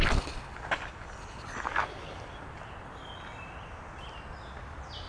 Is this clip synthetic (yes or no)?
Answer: no